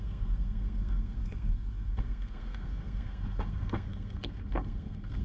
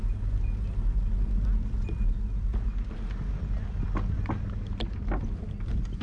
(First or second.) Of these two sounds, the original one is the second